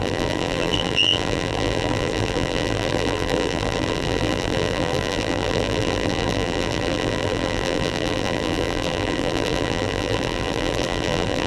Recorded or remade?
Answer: remade